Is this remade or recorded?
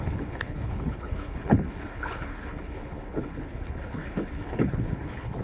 remade